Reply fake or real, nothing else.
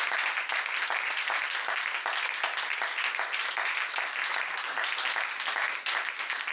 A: real